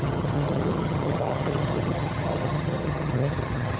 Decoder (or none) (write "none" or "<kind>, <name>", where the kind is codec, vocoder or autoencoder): vocoder, HiFi-GAN